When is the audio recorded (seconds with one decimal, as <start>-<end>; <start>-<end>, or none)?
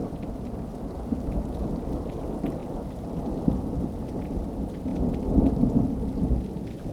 0.7-6.9